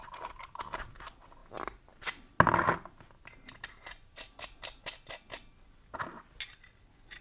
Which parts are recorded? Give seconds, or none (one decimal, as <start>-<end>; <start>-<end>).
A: 0.0-7.2